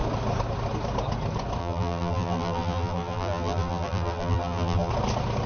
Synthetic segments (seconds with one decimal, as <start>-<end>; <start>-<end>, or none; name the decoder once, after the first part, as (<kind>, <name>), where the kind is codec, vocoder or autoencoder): 1.6-4.9 (vocoder, BigVGAN v2)

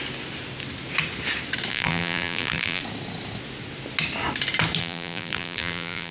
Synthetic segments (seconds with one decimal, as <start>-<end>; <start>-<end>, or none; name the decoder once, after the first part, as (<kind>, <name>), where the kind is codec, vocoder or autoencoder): 1.7-2.8 (vocoder, BigVGAN v2); 4.8-6.1

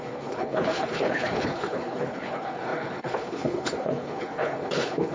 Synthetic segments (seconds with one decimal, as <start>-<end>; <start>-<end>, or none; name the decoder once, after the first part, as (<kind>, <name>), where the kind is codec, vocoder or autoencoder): 0.0-5.1 (codec, HILCodec)

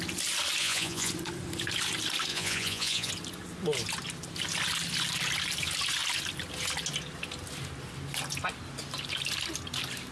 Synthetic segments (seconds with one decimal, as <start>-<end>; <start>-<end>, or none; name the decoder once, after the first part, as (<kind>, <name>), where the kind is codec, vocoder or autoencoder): 0.6-1.1 (vocoder, Vocos); 2.3-3.1

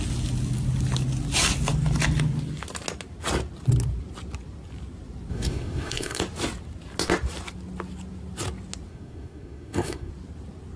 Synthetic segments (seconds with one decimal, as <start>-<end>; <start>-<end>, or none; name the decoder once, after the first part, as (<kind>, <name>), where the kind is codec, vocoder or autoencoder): 5.3-6.2 (codec, SNAC); 8.9-10.1

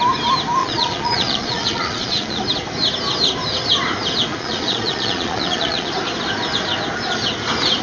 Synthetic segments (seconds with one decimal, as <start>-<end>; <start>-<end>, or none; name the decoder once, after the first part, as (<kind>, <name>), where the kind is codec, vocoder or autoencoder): 0.6-2.4 (vocoder, Vocos); 4.3-5.9

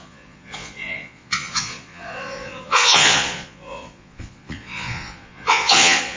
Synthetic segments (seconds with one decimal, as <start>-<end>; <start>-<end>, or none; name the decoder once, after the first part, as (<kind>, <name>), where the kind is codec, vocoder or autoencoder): 0.0-6.2 (vocoder, Vocos)